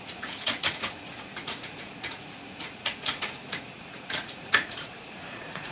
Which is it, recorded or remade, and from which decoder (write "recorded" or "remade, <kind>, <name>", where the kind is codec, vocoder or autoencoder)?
remade, vocoder, Vocos